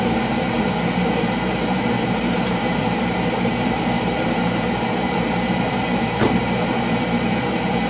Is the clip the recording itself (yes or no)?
no